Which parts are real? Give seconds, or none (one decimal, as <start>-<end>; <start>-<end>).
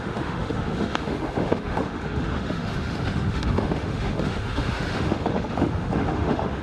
none